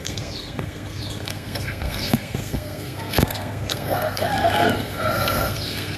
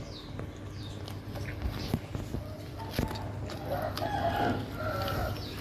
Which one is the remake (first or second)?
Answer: first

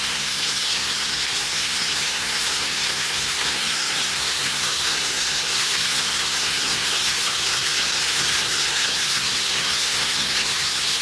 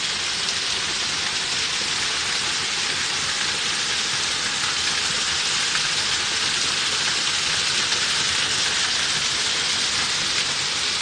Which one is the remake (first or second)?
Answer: first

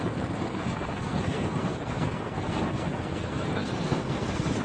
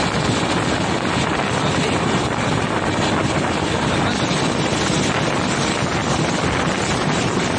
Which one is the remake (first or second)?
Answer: first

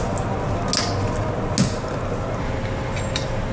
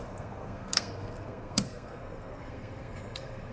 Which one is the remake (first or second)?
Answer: second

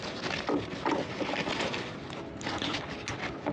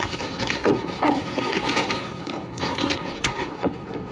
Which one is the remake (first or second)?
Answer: second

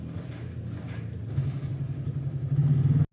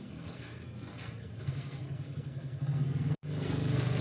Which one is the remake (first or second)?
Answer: second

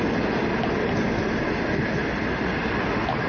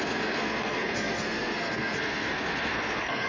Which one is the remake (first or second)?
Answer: second